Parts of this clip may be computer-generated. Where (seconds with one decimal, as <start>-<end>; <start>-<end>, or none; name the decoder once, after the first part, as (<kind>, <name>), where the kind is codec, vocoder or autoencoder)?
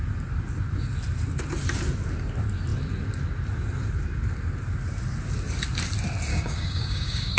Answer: 6.3-7.4 (codec, DAC)